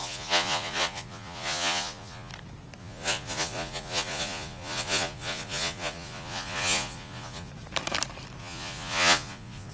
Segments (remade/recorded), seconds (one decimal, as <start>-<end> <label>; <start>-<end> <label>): 0.0-2.3 remade; 2.3-2.8 recorded; 2.8-7.5 remade; 7.5-8.4 recorded; 8.4-9.7 remade